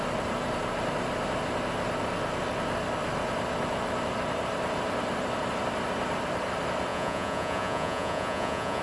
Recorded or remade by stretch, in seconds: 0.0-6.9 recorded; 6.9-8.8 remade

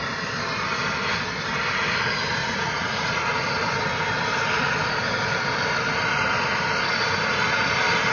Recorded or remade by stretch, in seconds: 0.0-2.4 recorded; 2.4-3.2 remade; 3.2-8.1 recorded